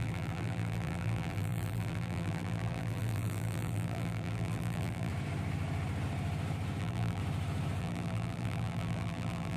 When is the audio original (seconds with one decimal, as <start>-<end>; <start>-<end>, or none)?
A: 5.1-6.8; 7.2-7.8